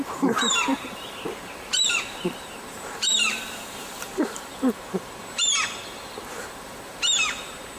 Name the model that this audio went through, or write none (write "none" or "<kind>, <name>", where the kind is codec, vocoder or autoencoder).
vocoder, BigVGAN v2